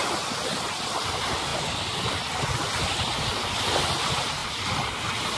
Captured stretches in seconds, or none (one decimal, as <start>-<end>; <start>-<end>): 0.0-5.4